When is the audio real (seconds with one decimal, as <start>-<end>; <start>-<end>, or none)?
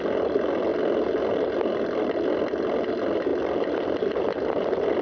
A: 0.7-2.0